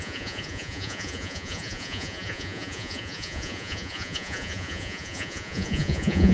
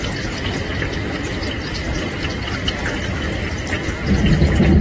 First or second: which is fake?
first